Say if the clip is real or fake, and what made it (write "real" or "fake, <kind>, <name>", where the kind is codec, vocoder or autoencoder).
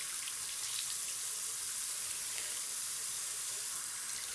fake, vocoder, BigVGAN v2